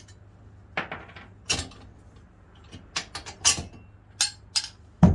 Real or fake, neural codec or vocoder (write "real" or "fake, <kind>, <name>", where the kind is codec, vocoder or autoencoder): real